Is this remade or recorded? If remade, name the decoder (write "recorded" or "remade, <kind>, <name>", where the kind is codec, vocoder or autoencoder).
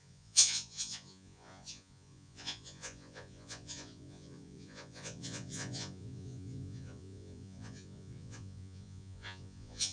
remade, vocoder, Vocos